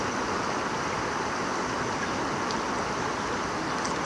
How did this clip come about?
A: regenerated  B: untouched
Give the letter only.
B